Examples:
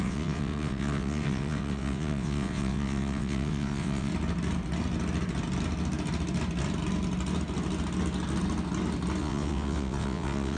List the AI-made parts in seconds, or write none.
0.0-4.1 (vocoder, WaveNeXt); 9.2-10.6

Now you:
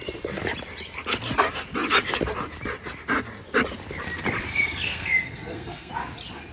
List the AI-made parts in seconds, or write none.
4.5-5.9 (codec, SNAC)

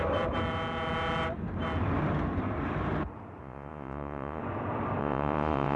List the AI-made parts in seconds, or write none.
3.4-4.4 (vocoder, Vocos); 5.0-5.8

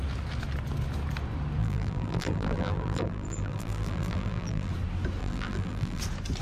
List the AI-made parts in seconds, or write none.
1.6-4.7 (vocoder, BigVGAN v2); 5.2-6.0

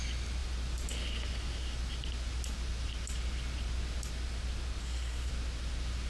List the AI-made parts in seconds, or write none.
4.8-5.3 (codec, SNAC)